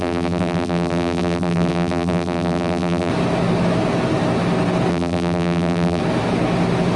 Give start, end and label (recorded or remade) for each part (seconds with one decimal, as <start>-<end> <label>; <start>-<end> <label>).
0.0-3.1 remade; 3.1-4.9 recorded; 4.9-6.0 remade; 6.0-7.0 recorded